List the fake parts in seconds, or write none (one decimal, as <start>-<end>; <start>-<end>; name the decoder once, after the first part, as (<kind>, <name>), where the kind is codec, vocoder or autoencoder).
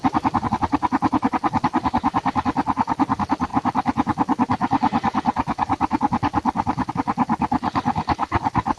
none